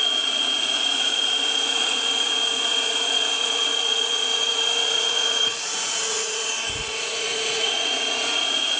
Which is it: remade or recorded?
remade